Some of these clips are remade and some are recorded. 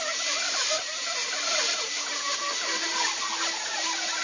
remade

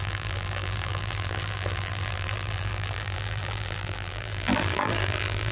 remade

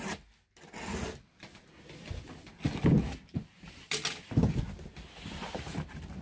recorded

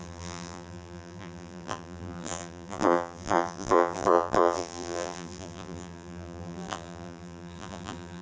remade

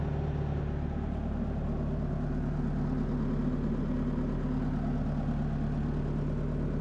recorded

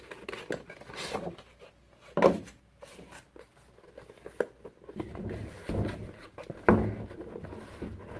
recorded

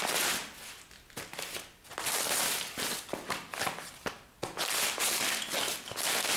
recorded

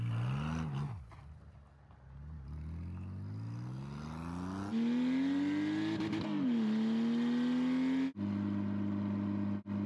recorded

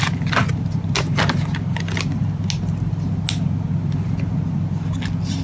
recorded